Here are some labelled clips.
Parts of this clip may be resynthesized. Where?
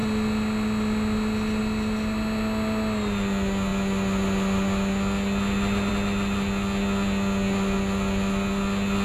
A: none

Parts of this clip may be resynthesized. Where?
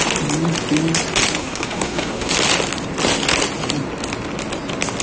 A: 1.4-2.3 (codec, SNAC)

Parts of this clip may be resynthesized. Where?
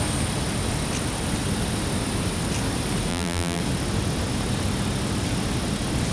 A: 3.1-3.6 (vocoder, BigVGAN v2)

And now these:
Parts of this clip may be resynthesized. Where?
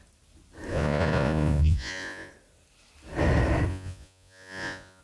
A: 0.7-2.3 (vocoder, Vocos); 3.7-5.0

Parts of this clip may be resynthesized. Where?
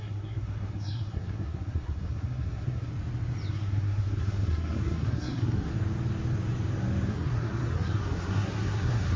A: 0.0-2.9 (codec, SNAC); 3.5-5.7; 7.1-9.2